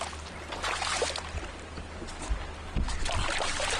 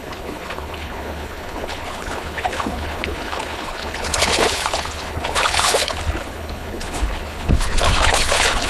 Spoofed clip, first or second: second